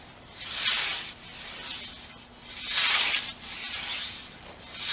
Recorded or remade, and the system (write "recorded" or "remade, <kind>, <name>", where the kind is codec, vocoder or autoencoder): recorded